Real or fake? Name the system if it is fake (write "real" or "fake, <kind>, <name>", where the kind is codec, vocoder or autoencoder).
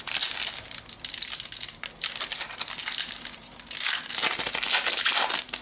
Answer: real